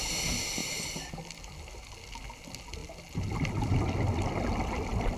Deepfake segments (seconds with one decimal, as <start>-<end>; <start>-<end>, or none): none